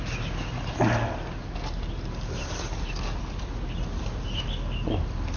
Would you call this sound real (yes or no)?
yes